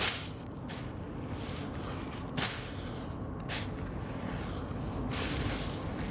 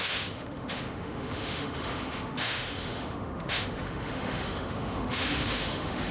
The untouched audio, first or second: first